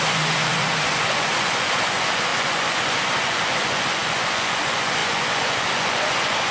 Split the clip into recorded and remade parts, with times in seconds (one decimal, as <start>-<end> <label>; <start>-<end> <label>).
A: 0.0-6.5 remade